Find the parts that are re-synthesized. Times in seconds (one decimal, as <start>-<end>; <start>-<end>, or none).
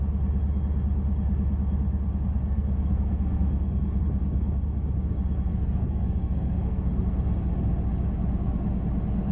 2.4-4.0; 5.5-7.3